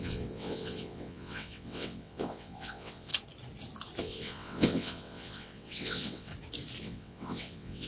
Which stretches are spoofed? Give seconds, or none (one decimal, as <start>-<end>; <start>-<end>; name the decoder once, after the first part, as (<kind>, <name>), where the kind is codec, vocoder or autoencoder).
0.0-3.1 (vocoder, WaveNeXt); 4.0-6.3; 6.8-7.9